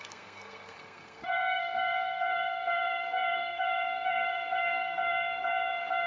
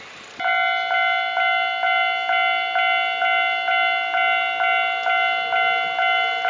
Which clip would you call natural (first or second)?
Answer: second